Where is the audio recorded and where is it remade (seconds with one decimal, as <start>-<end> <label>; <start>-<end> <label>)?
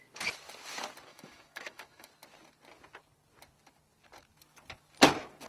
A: 0.0-1.1 recorded; 1.1-2.1 remade; 2.1-5.5 recorded